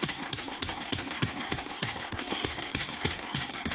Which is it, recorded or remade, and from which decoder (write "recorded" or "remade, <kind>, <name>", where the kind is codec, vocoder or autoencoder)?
remade, codec, SNAC